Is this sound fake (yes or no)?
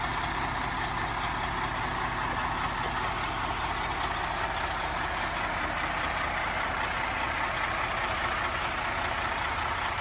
no